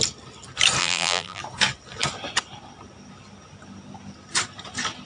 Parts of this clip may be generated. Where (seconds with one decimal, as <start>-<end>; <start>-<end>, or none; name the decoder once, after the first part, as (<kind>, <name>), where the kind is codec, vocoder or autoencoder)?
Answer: 0.8-1.4 (vocoder, BigVGAN v2)